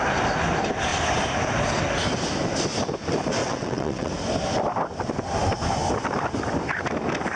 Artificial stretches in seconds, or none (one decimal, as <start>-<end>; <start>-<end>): 3.4-4.1

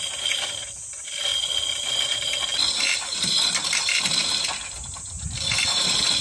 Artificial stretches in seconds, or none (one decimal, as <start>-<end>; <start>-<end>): none

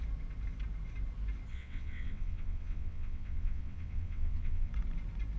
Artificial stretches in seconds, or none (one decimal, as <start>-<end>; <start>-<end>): 1.5-4.7

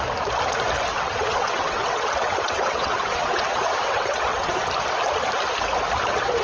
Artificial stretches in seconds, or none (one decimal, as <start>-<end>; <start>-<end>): 0.9-4.5

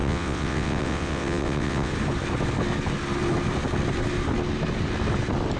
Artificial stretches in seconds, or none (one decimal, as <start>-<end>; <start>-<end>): 0.0-1.9

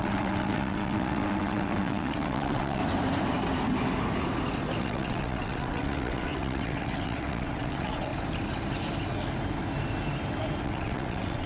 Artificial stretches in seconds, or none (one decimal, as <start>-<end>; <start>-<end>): 0.0-2.8; 4.8-8.1; 10.6-11.5